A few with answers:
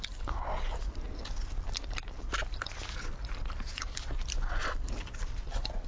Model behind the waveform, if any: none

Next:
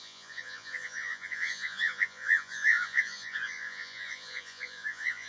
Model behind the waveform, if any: vocoder, Vocos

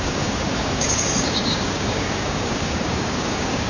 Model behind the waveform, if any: codec, DAC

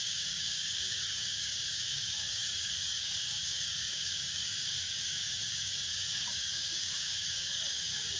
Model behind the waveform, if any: codec, DAC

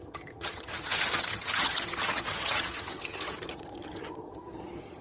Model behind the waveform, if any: vocoder, HiFi-GAN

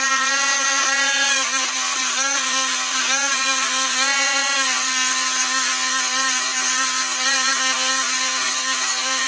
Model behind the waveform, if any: vocoder, Vocos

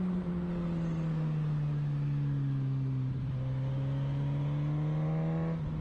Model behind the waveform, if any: none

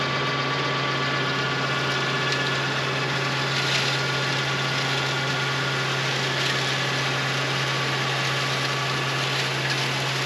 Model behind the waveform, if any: none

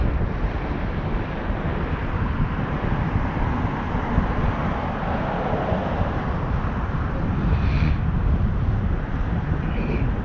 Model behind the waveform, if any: none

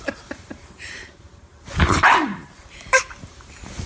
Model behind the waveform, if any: vocoder, BigVGAN v2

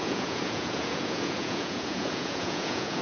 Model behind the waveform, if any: vocoder, Vocos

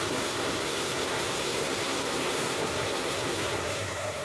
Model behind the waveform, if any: codec, SNAC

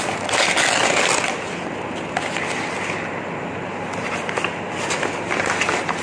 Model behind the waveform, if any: none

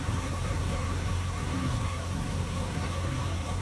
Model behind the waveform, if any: codec, SNAC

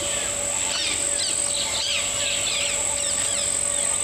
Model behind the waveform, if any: none